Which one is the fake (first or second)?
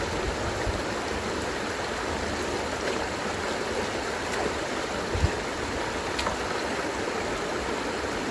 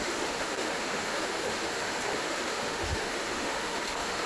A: second